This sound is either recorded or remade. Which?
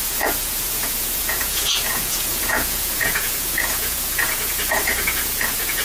remade